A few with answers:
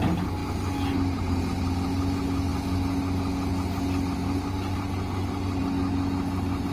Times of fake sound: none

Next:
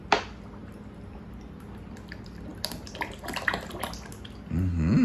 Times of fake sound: none

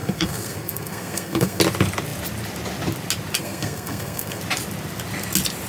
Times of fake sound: 0.0-1.6; 3.4-4.4

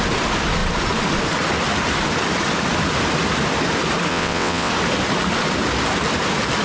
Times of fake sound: 4.1-4.7

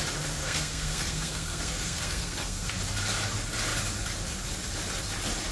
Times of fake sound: 0.4-2.7

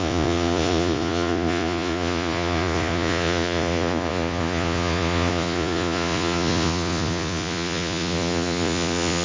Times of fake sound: 0.0-9.2